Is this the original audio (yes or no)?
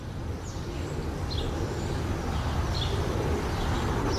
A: yes